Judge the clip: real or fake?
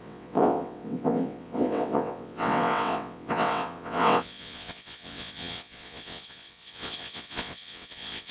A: fake